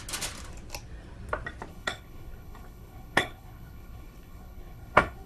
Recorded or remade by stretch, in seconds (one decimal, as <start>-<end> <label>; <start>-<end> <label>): 0.0-1.7 recorded; 1.7-5.3 remade